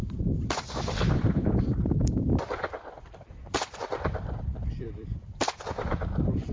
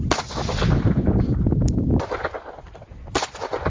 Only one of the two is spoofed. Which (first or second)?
first